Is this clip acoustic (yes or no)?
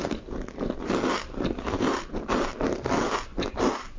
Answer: yes